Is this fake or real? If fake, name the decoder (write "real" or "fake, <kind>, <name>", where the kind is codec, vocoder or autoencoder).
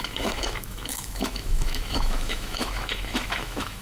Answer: fake, autoencoder, DAC-VAE